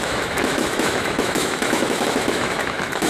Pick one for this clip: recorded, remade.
remade